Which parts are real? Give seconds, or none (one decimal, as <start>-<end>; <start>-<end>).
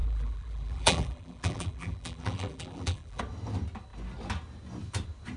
3.2-5.4